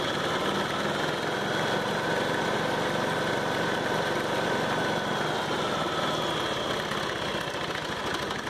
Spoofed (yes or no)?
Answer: no